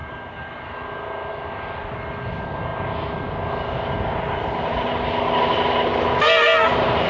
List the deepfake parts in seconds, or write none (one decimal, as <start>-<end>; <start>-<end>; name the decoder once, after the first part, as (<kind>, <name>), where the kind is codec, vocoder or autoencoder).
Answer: none